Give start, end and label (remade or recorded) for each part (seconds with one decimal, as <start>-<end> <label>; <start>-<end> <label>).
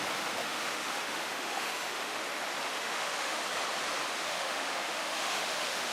0.0-0.4 recorded; 0.4-2.2 remade; 2.2-2.8 recorded; 2.8-3.4 remade; 3.4-4.2 recorded; 4.2-5.9 remade